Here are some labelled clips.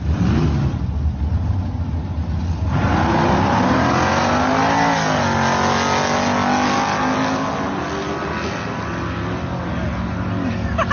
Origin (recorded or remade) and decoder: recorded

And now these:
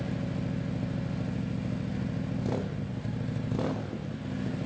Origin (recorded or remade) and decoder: recorded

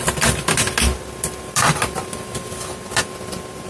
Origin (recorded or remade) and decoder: recorded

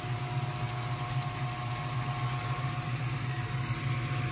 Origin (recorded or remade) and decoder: recorded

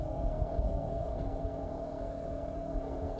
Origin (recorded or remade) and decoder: remade, codec, SNAC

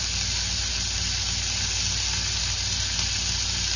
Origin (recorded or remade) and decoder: recorded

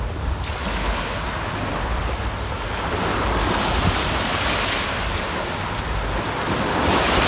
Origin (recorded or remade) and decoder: recorded